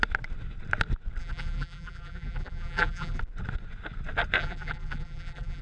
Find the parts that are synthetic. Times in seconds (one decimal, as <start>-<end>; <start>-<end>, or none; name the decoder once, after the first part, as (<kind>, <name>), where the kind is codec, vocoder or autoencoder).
1.2-3.2 (vocoder, BigVGAN v2); 4.4-5.6